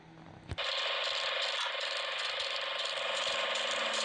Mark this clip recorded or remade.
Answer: recorded